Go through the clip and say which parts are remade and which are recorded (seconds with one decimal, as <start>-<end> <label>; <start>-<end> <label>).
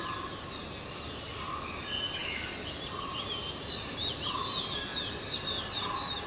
0.0-6.3 recorded